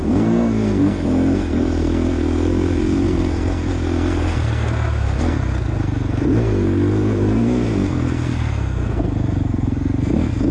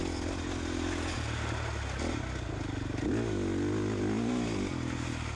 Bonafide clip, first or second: second